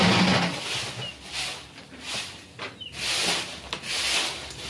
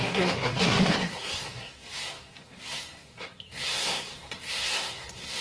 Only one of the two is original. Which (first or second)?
first